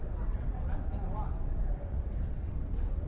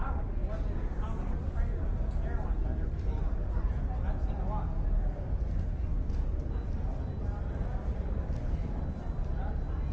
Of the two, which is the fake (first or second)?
first